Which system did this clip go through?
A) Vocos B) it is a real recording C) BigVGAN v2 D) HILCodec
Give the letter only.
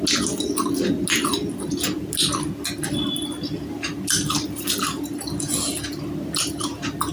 B